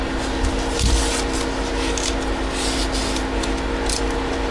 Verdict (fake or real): real